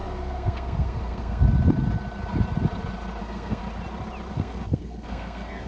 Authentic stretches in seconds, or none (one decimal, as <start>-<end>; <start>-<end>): 1.4-3.2; 3.6-4.3

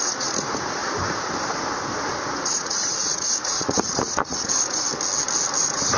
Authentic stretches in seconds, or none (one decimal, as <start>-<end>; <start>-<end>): 0.8-2.3; 4.9-5.6